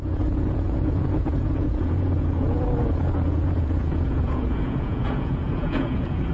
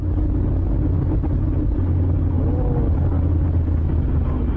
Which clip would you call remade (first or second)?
first